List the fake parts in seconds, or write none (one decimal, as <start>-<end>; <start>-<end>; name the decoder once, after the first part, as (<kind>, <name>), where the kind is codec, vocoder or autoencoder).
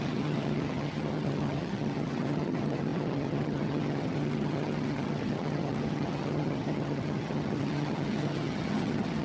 0.0-9.2 (vocoder, HiFi-GAN)